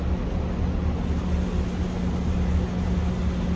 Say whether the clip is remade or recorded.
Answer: recorded